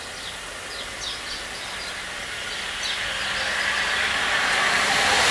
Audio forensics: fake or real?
real